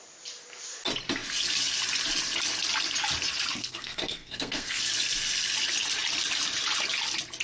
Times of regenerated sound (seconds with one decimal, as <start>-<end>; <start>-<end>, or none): 3.6-4.8